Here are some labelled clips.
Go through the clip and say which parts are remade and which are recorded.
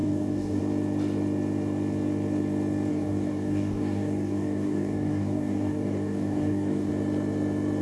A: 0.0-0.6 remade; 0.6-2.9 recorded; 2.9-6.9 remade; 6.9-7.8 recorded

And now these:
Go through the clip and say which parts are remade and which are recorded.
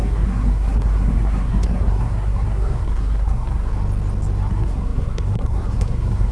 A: 0.0-3.7 remade; 3.7-4.5 recorded; 4.5-6.3 remade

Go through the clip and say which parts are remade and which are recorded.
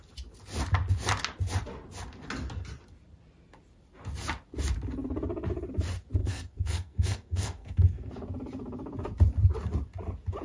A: 0.0-6.2 recorded; 6.2-8.1 remade; 8.1-10.4 recorded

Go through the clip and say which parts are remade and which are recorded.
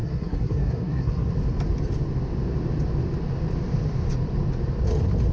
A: 0.0-1.3 remade; 1.3-5.3 recorded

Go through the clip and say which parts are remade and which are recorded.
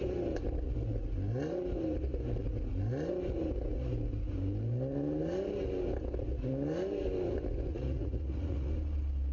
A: 0.0-7.7 recorded; 7.7-8.7 remade; 8.7-9.3 recorded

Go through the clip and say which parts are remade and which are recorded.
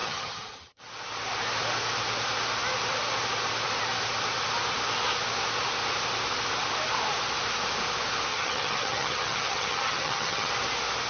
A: 0.0-0.8 remade; 0.8-8.3 recorded; 8.3-10.5 remade; 10.5-11.1 recorded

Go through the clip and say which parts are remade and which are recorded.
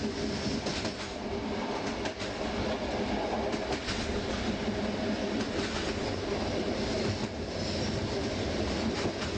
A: 0.0-8.2 recorded; 8.2-9.4 remade